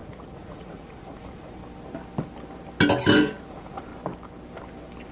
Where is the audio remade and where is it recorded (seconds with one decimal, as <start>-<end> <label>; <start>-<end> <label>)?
0.0-1.6 remade; 1.6-3.5 recorded; 3.5-3.9 remade; 3.9-5.1 recorded